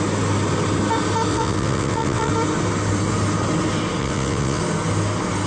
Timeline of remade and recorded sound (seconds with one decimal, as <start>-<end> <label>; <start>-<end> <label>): 0.0-1.3 recorded; 1.3-2.3 remade; 2.3-4.0 recorded; 4.0-4.6 remade; 4.6-5.5 recorded